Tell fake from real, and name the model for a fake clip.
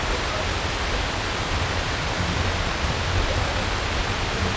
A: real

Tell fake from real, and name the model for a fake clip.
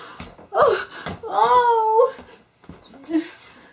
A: real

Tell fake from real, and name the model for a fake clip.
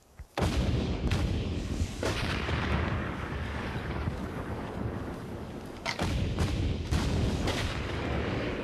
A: fake, codec, DAC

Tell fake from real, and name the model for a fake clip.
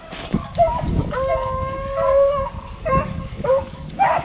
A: fake, codec, DAC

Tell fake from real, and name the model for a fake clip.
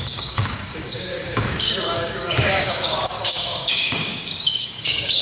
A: fake, codec, DAC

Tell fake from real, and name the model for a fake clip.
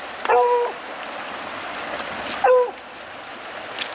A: real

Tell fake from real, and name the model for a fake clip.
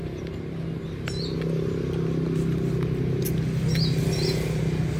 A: real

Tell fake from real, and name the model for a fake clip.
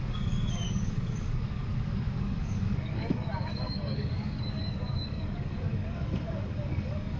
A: fake, codec, DAC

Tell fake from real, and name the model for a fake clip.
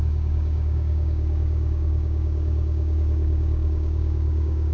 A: fake, codec, DAC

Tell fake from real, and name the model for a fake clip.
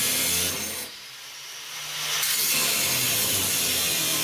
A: real